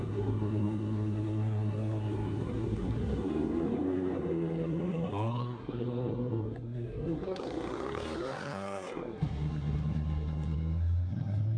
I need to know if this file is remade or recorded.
remade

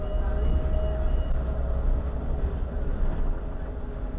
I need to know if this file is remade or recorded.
recorded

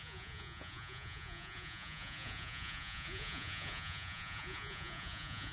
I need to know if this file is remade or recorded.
remade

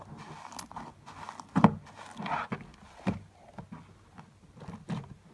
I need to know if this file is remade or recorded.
recorded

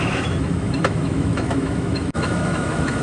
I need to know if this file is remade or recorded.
remade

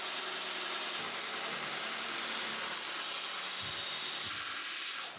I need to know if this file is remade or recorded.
recorded